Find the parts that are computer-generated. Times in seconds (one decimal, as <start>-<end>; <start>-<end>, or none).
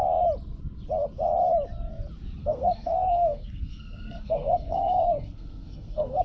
2.4-6.2